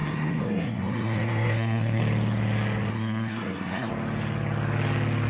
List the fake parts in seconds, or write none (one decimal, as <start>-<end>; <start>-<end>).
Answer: 0.0-2.0; 2.9-3.9

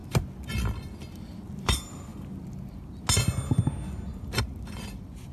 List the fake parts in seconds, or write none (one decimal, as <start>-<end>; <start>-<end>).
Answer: 1.2-2.1; 4.8-5.3

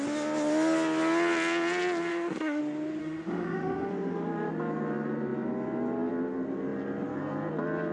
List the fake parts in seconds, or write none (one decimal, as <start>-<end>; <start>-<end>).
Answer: 2.1-2.6; 3.0-3.9

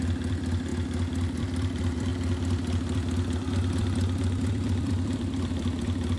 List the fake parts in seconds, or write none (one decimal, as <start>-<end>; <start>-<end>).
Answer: 0.0-0.7; 1.4-6.2

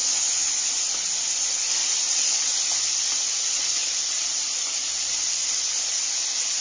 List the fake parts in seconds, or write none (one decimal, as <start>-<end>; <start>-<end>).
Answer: 0.0-0.7

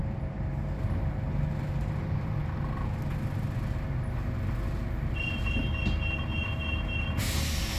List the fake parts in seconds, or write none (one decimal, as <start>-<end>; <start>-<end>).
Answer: 0.0-2.4; 5.1-6.3; 7.2-7.8

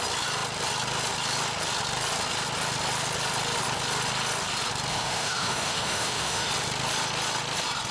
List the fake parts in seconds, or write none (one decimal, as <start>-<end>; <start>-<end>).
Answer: 4.9-6.5